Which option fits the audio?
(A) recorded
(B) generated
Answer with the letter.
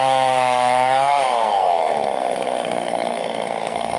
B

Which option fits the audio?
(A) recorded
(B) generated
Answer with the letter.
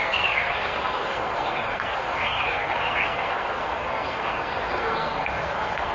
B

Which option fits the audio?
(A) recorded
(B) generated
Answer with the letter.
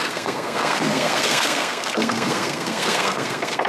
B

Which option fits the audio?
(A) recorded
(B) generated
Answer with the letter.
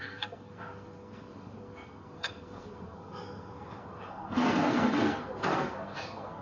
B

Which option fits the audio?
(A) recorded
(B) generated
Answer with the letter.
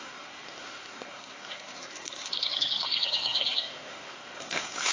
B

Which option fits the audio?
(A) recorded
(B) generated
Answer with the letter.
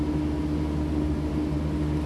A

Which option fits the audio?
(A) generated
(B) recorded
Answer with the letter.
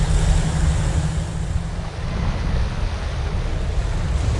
B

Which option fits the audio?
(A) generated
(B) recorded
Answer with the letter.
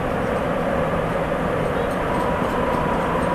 B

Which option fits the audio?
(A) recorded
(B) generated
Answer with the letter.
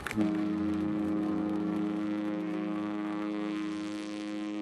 B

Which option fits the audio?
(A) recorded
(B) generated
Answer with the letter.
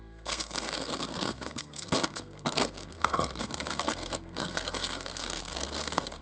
B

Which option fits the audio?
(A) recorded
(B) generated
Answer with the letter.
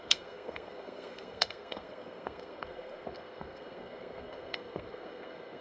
B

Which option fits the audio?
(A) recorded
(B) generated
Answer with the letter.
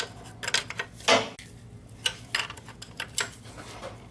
A